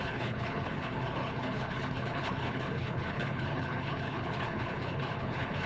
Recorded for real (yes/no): no